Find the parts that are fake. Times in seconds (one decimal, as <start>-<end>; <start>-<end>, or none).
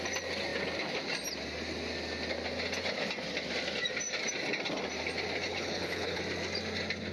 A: 5.5-6.2